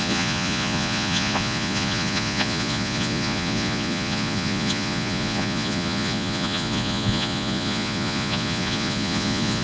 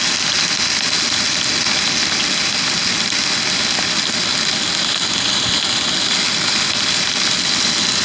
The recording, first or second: second